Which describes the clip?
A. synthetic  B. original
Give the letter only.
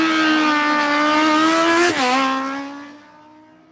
B